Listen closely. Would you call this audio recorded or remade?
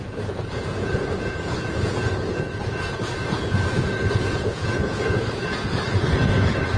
remade